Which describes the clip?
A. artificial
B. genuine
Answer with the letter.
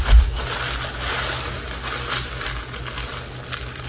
B